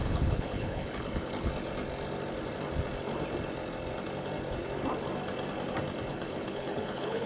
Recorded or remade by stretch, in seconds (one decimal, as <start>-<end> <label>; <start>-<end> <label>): 0.0-1.3 remade; 1.3-6.1 recorded; 6.1-7.3 remade